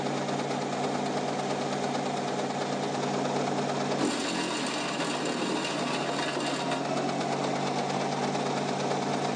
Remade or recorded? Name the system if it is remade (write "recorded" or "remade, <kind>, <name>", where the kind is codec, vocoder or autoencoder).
recorded